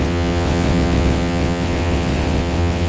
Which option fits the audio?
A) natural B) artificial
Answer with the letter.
B